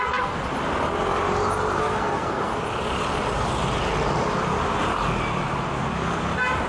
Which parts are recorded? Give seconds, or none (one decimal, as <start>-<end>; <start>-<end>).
0.4-1.8; 2.5-6.7